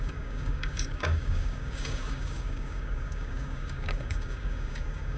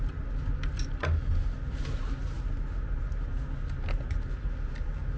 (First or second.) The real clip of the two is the second